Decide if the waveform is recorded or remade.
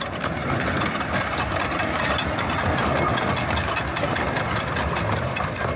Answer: recorded